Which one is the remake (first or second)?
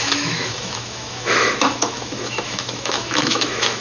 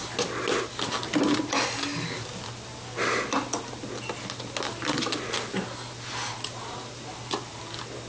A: first